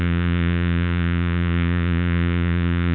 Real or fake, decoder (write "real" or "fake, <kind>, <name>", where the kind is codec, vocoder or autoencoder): fake, vocoder, Vocos